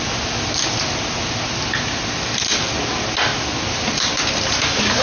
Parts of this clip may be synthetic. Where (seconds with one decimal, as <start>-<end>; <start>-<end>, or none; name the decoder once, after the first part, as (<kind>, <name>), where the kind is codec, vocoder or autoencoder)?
none